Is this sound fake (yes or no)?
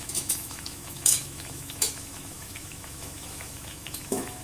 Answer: yes